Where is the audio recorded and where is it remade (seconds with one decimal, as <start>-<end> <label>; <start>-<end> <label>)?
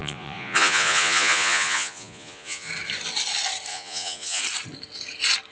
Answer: 0.0-2.7 remade; 2.7-3.7 recorded; 3.7-4.4 remade; 4.4-5.5 recorded